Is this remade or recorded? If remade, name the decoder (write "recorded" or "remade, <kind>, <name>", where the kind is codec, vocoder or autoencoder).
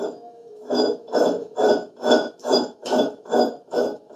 remade, autoencoder, DAC-VAE